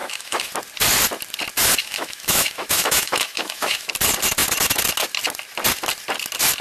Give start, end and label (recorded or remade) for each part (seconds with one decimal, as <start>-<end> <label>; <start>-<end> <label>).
0.0-0.5 remade; 0.5-1.8 recorded; 1.8-3.9 remade; 3.9-6.6 recorded